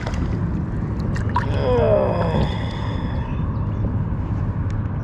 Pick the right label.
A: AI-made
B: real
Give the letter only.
B